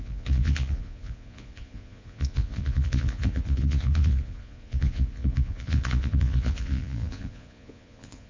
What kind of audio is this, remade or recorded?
remade